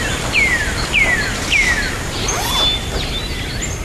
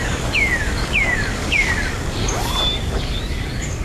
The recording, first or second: first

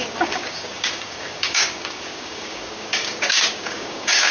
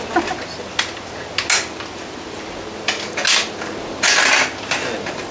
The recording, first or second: second